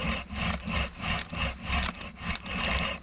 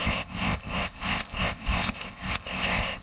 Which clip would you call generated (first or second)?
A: second